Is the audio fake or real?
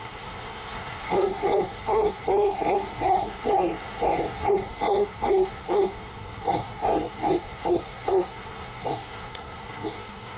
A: fake